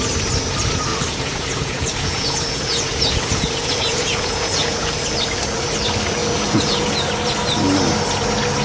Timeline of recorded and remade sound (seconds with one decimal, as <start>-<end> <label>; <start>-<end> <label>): 0.0-0.9 recorded; 0.9-4.9 remade; 4.9-6.2 recorded; 6.2-7.1 remade; 7.1-8.6 recorded